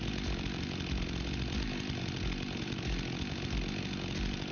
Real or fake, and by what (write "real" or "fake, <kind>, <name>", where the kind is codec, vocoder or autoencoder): fake, vocoder, BigVGAN v2